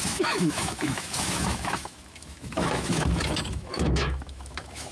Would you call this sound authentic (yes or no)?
no